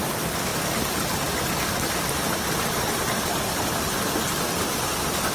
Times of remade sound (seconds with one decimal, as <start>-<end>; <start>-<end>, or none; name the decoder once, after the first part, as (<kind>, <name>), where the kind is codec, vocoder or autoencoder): none